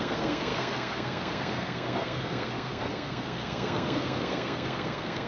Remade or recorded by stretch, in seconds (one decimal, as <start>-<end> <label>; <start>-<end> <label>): 0.0-5.3 remade